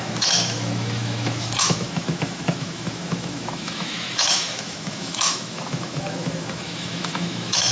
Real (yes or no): no